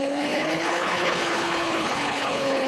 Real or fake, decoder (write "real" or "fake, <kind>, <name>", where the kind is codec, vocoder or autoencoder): fake, codec, HILCodec